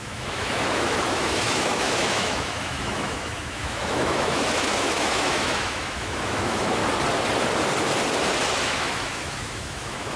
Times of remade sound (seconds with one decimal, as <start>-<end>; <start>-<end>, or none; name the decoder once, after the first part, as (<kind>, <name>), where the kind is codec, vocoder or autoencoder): 0.0-6.8 (autoencoder, DAC-VAE); 8.5-10.2